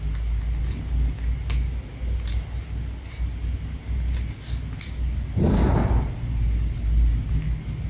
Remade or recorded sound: recorded